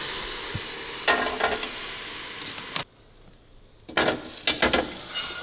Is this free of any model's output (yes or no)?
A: yes